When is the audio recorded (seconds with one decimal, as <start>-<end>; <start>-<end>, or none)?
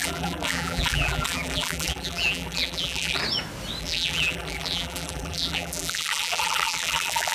3.2-3.8